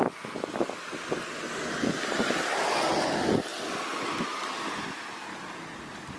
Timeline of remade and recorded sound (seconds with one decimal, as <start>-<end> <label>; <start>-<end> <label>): 0.0-6.2 recorded